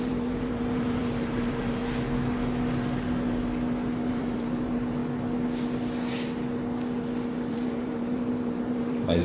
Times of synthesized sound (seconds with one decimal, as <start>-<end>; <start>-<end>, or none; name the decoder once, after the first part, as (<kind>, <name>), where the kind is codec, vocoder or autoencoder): 0.0-1.8 (vocoder, BigVGAN v2); 4.1-5.0; 7.5-9.2